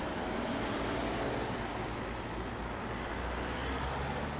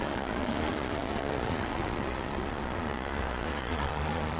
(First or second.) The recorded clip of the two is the first